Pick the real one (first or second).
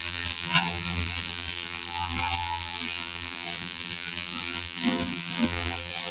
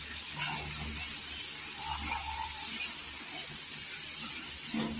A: second